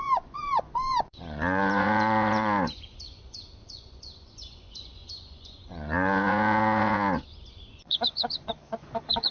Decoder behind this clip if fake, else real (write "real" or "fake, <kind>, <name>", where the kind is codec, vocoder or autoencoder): fake, vocoder, Vocos